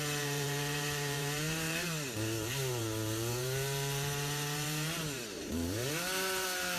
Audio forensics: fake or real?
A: fake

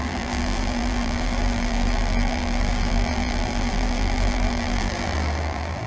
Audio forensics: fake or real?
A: fake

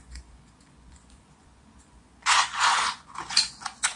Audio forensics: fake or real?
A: fake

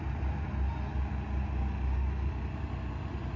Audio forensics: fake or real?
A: real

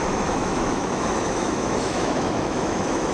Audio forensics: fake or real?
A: fake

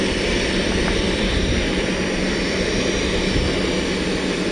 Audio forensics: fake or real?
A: real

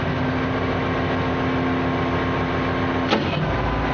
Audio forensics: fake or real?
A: real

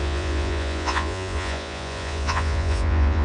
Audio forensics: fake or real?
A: fake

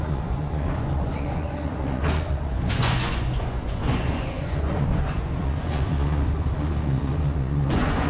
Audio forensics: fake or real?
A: fake